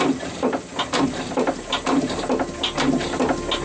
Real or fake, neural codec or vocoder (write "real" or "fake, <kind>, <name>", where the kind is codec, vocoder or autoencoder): real